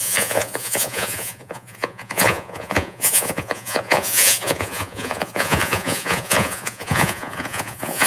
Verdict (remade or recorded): remade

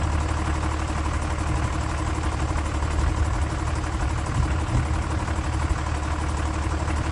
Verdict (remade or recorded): recorded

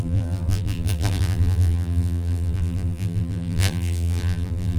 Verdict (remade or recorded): remade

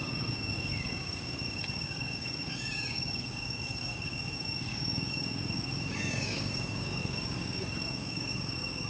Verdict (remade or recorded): remade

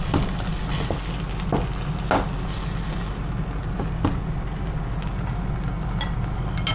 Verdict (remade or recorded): recorded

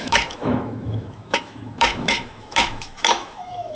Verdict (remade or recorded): remade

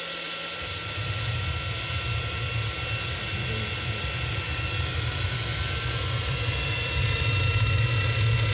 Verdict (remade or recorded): recorded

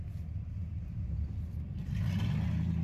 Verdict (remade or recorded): remade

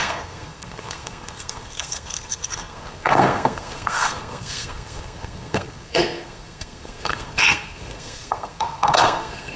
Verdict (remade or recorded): remade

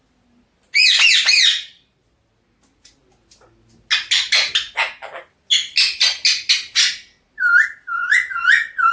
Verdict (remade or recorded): recorded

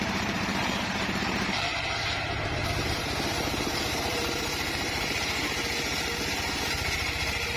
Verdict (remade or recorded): remade